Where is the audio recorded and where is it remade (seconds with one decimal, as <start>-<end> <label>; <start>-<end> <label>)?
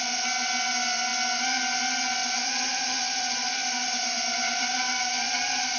0.0-2.2 recorded; 2.2-5.8 remade